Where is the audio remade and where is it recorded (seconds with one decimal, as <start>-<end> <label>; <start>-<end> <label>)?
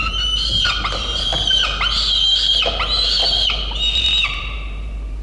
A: 0.0-1.3 remade; 1.3-4.4 recorded; 4.4-5.2 remade